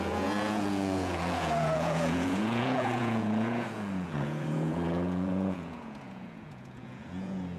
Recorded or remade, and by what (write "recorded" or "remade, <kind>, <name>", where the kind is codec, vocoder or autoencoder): remade, vocoder, Vocos